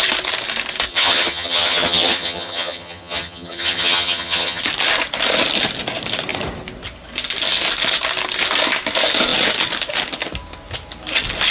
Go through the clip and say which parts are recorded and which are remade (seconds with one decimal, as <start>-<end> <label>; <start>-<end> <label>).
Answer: 0.0-0.9 recorded; 0.9-4.6 remade; 4.6-11.5 recorded

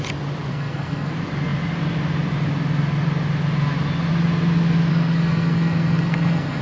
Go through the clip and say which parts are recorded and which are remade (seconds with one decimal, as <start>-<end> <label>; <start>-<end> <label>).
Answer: 0.0-0.5 recorded; 0.5-1.1 remade; 1.1-4.9 recorded; 4.9-6.6 remade

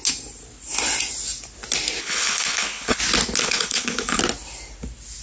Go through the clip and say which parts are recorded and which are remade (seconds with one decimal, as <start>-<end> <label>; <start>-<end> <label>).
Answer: 0.0-2.0 recorded; 2.0-3.0 remade; 3.0-3.4 recorded; 3.4-4.2 remade; 4.2-5.2 recorded

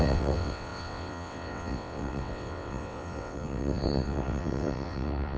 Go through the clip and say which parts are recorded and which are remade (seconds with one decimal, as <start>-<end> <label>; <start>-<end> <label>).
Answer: 0.0-5.4 remade